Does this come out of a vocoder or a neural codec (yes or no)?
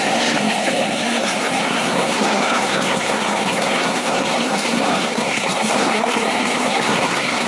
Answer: yes